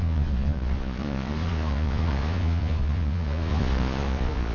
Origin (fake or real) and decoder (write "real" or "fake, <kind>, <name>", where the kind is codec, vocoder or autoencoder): fake, vocoder, Vocos